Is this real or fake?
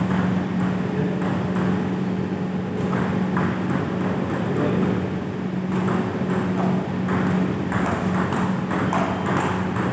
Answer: real